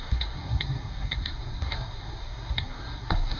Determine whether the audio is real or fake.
fake